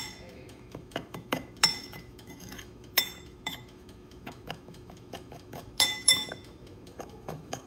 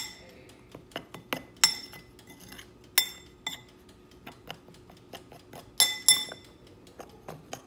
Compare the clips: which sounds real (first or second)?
second